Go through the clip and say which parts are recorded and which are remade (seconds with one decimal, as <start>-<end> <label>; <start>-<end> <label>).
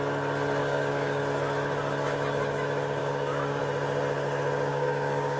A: 0.0-0.6 recorded; 0.6-1.2 remade; 1.2-3.0 recorded; 3.0-3.6 remade; 3.6-4.7 recorded; 4.7-5.4 remade